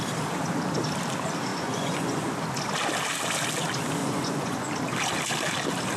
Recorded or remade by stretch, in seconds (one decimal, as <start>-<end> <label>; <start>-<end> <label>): 0.0-1.5 recorded; 1.5-2.3 remade; 2.3-4.0 recorded; 4.0-4.7 remade; 4.7-6.0 recorded